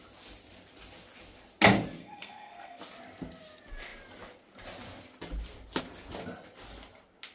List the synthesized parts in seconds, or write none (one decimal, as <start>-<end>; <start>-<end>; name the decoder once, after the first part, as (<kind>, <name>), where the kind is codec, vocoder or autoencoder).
2.0-2.8 (codec, SNAC)